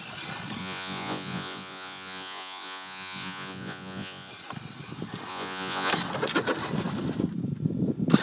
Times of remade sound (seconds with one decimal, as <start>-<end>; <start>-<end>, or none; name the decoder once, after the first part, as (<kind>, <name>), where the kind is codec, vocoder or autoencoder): 0.6-4.3 (vocoder, Vocos); 5.3-5.9